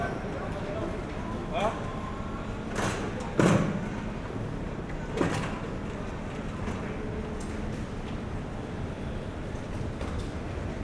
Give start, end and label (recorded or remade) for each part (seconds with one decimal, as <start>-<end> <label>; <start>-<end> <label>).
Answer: 0.0-10.8 recorded